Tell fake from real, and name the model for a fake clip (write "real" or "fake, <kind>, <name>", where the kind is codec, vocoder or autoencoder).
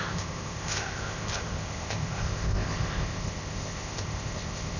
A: fake, codec, ZipCodec